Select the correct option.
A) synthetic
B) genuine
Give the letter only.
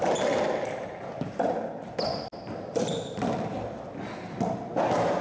B